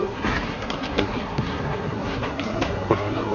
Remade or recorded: remade